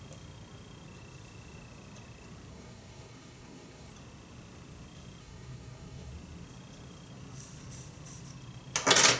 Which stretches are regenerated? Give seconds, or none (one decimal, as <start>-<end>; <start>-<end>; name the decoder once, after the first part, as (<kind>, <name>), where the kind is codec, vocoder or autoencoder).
2.5-3.9 (codec, SNAC); 5.2-6.1